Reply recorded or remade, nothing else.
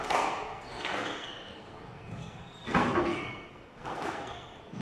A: remade